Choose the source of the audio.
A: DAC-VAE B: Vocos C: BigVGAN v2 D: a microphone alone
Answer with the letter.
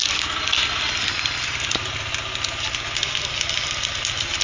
D